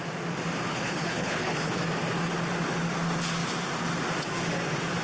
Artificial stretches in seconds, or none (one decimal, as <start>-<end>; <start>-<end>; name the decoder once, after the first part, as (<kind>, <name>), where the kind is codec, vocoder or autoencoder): 0.7-1.8 (codec, HILCodec)